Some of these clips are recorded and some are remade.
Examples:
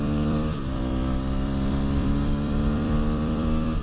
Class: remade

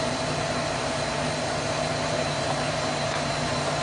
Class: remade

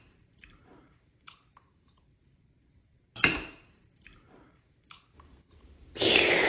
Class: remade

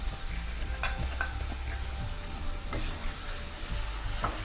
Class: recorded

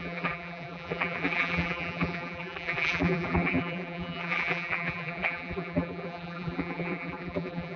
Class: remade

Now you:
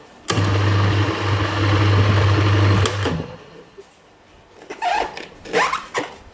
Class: recorded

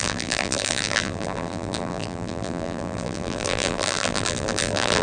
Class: remade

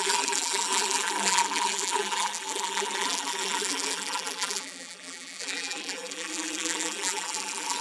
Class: remade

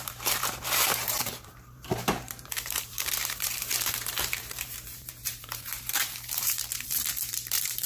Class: remade